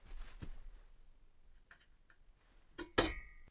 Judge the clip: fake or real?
real